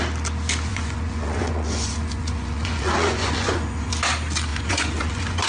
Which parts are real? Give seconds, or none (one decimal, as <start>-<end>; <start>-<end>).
0.0-0.7; 3.9-4.5